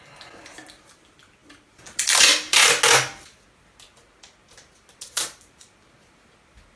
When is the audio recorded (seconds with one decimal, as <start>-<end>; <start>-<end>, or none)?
0.0-6.8